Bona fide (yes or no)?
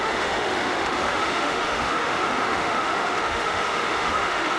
no